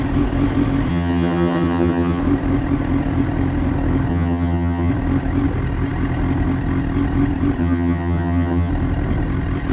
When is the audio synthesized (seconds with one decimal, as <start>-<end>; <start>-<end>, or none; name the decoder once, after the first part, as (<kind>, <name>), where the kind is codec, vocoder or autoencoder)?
0.9-2.2 (vocoder, HiFi-GAN); 4.1-4.9; 7.6-8.7